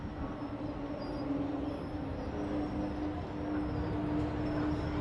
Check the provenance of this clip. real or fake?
real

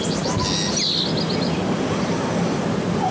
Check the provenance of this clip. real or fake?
real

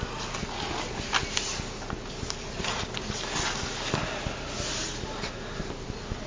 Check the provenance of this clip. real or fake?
real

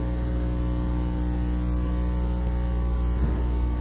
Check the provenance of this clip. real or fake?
real